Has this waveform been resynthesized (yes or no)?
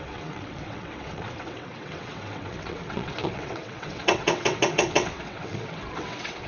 yes